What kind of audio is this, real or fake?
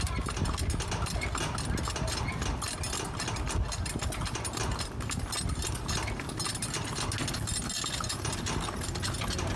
real